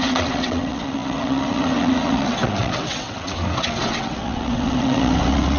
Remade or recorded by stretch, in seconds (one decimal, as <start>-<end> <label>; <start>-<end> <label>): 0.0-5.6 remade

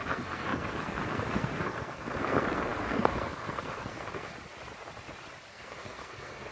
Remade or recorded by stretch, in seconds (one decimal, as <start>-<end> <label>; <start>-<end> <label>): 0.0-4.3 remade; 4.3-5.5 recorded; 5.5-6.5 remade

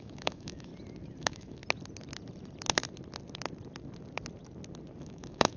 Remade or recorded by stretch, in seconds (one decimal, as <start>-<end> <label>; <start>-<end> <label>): 0.0-0.7 remade; 0.7-1.2 recorded; 1.2-1.6 remade; 1.6-5.0 recorded; 5.0-5.6 remade

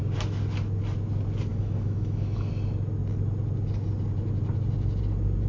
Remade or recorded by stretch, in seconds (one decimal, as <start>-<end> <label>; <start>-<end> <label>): 0.0-1.5 recorded; 1.5-2.5 remade; 2.5-5.5 recorded

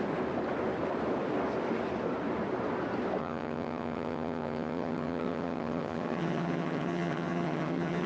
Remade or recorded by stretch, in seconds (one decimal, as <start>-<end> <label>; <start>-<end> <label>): 0.0-3.2 recorded; 3.2-8.1 remade

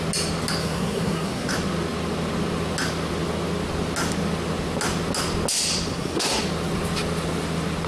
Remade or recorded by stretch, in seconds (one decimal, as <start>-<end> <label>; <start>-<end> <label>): 0.0-0.6 recorded; 0.6-1.5 remade; 1.5-5.9 recorded; 5.9-6.4 remade; 6.4-7.9 recorded

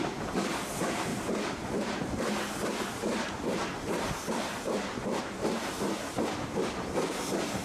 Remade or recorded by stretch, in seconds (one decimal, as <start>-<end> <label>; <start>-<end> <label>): 0.0-1.1 recorded; 1.1-5.2 remade; 5.2-7.6 recorded